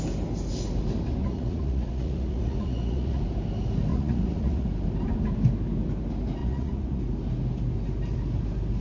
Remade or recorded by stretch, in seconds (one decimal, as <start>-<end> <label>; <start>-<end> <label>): 0.0-1.2 recorded; 1.2-3.2 remade; 3.2-3.9 recorded; 3.9-4.7 remade; 4.7-6.4 recorded; 6.4-7.0 remade; 7.0-8.8 recorded